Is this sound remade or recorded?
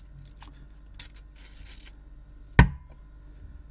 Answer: recorded